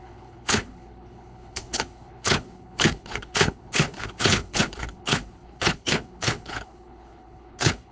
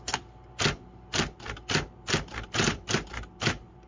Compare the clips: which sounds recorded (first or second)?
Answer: second